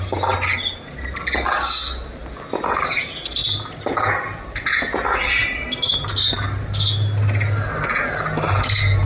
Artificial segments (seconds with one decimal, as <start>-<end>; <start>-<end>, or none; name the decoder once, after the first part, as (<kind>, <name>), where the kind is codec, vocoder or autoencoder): none